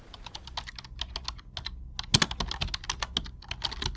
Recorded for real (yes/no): yes